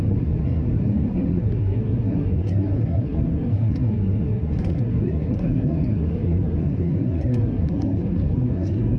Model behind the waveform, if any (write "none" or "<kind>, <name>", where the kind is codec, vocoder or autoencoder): codec, SNAC